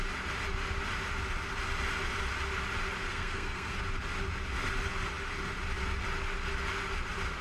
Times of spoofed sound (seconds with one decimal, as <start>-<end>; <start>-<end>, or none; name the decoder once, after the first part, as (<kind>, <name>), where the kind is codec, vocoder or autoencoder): 3.1-3.8 (codec, SNAC)